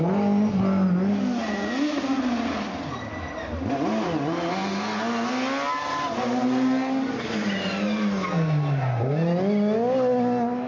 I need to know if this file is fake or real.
real